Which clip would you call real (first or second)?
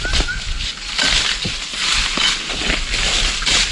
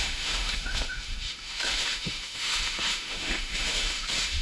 first